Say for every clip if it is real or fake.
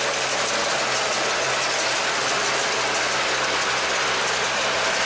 real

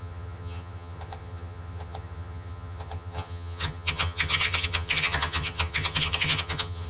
fake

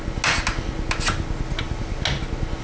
real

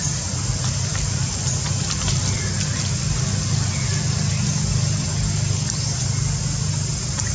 real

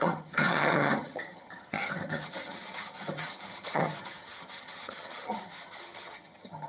fake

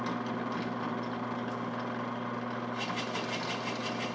real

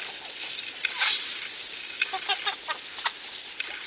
real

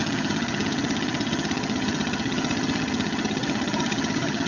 fake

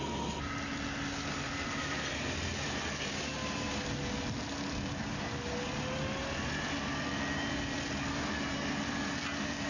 real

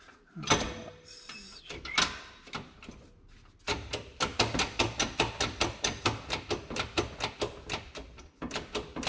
real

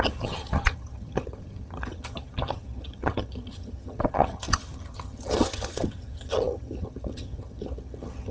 fake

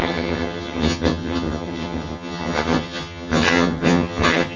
fake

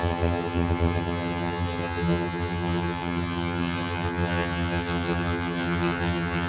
fake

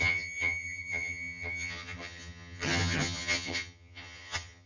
fake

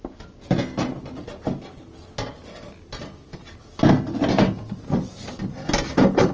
real